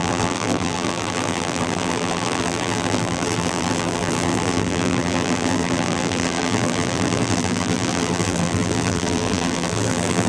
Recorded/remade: remade